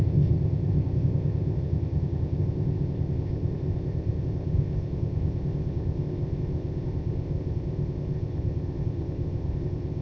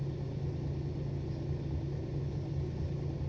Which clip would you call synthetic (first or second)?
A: first